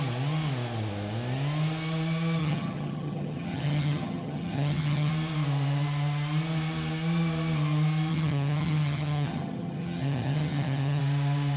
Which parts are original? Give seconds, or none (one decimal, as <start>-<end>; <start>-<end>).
0.0-2.4; 5.1-8.1; 11.0-11.6